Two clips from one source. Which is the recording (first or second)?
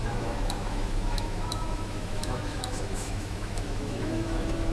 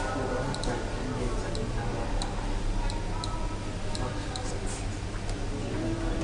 second